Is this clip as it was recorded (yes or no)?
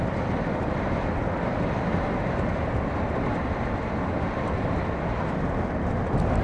yes